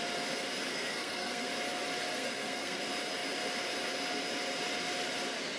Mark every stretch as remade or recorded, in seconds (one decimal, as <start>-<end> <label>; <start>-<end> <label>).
0.0-0.7 recorded; 0.7-1.5 remade; 1.5-2.1 recorded; 2.1-2.8 remade; 2.8-5.6 recorded